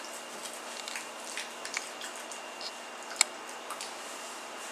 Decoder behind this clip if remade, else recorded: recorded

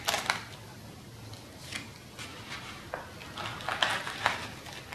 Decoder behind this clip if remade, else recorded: recorded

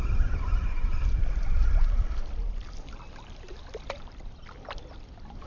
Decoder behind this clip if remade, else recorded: remade, vocoder, BigVGAN v2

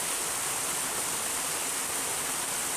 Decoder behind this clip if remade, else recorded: recorded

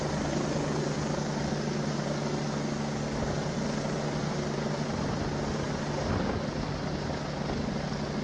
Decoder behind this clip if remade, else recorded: recorded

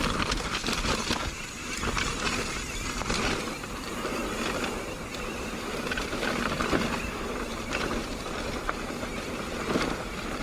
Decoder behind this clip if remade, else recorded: remade, vocoder, BigVGAN v2